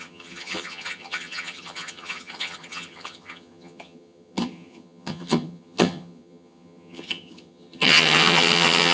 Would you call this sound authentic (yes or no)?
no